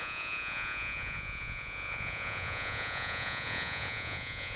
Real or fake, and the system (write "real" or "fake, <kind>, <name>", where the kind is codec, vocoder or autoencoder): fake, vocoder, Vocos